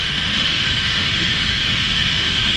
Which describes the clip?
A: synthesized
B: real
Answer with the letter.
A